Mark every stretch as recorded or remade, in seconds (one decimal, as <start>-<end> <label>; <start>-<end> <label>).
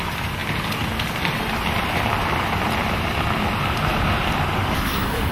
0.0-4.6 recorded; 4.6-5.3 remade